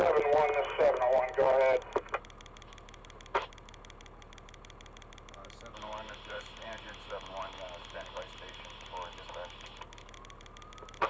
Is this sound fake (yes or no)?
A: no